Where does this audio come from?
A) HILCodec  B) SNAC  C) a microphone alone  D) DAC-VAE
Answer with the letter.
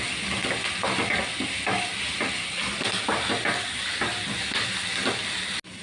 C